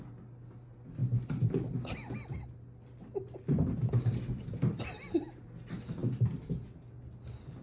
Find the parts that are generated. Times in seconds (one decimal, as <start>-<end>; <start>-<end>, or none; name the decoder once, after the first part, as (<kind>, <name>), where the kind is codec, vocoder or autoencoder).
none